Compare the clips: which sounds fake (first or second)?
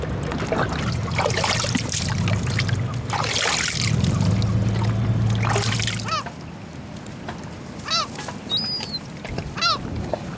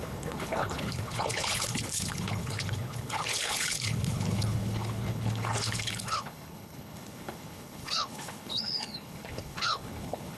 second